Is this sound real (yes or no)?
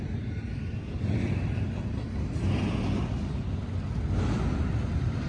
yes